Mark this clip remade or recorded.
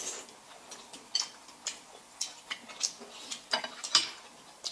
recorded